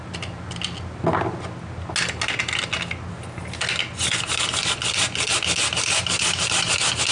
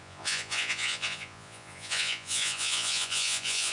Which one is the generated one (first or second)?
second